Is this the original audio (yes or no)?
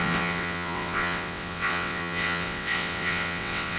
no